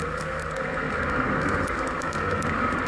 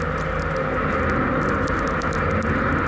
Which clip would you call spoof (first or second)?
first